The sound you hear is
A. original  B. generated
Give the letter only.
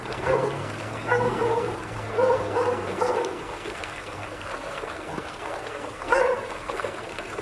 B